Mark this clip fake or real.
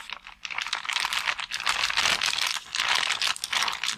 real